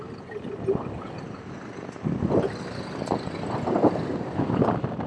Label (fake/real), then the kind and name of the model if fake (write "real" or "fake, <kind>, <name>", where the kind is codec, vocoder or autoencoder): real